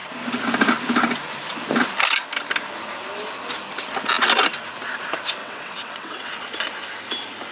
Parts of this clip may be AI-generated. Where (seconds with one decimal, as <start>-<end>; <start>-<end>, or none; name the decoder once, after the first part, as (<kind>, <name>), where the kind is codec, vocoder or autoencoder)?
5.4-6.3 (vocoder, WaveNeXt)